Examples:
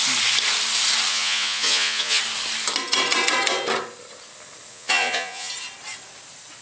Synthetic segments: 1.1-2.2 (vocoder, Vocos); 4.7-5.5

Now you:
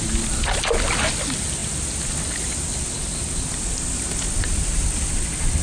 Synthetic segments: none

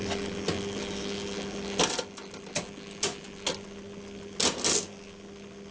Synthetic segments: none

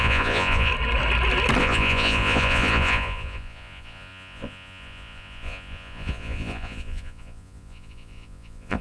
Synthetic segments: 0.0-0.7 (vocoder, Vocos); 1.6-8.8